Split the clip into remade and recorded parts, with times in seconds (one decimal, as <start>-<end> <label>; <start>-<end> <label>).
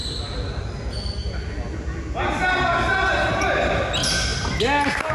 0.0-5.1 recorded